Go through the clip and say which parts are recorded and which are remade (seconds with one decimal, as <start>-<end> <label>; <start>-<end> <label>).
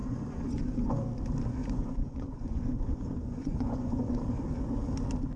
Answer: 0.0-0.9 remade; 0.9-1.6 recorded; 1.6-4.2 remade; 4.2-5.4 recorded